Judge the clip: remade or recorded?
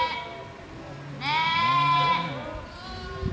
recorded